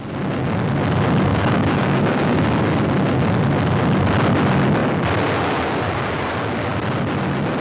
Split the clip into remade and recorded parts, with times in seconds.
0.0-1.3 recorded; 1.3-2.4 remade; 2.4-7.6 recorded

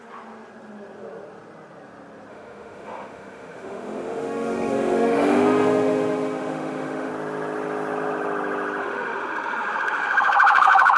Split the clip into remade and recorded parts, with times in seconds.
0.0-2.3 recorded; 2.3-7.1 remade; 7.1-8.8 recorded; 8.8-11.0 remade

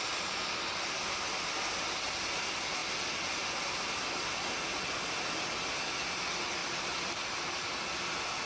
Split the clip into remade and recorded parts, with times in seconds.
0.0-8.5 recorded

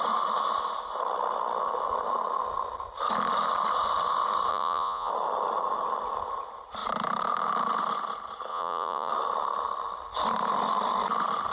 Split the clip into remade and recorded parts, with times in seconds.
0.0-4.5 recorded; 4.5-5.1 remade; 5.1-8.5 recorded; 8.5-9.1 remade; 9.1-11.5 recorded

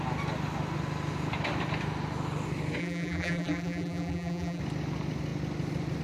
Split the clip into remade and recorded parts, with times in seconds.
0.0-2.8 recorded; 2.8-4.6 remade; 4.6-6.0 recorded

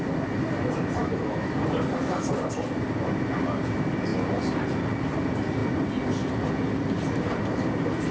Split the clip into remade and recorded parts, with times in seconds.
0.0-1.0 recorded; 1.0-1.5 remade; 1.5-8.1 recorded

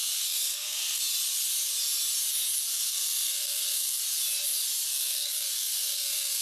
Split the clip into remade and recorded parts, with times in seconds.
0.0-1.0 remade; 1.0-2.7 recorded; 2.7-4.0 remade; 4.0-4.9 recorded; 4.9-6.4 remade